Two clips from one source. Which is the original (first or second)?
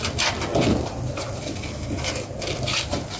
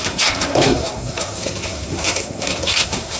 first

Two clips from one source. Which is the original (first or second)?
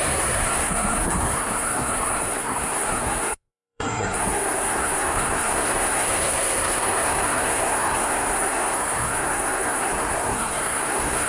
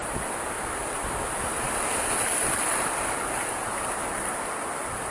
second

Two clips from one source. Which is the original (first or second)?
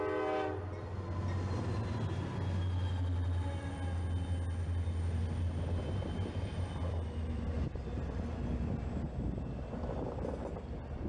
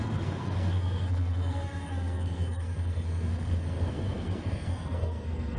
first